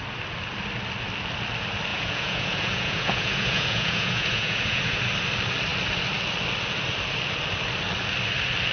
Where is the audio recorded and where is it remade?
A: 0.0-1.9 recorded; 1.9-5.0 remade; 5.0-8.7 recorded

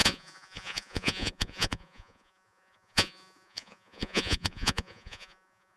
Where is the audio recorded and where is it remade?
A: 0.0-5.8 remade